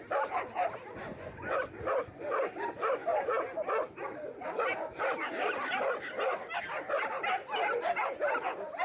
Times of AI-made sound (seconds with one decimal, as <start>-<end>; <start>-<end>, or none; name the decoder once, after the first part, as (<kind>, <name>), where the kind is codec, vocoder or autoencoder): 1.1-1.6 (vocoder, Vocos)